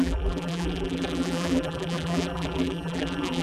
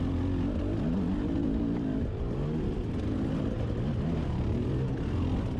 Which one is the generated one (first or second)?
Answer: first